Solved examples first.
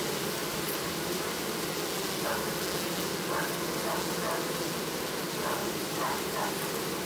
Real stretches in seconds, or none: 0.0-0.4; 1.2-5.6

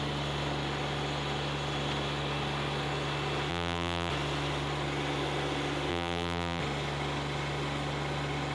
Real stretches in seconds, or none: 0.0-3.5; 4.1-5.9; 6.6-8.5